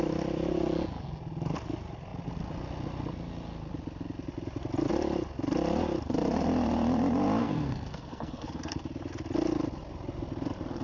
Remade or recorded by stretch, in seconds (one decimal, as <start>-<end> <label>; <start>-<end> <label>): 0.0-7.4 recorded; 7.4-8.8 remade; 8.8-10.8 recorded